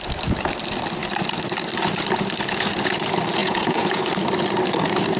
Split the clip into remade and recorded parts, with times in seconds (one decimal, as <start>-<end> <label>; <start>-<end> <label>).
0.0-3.4 recorded; 3.4-4.0 remade; 4.0-5.2 recorded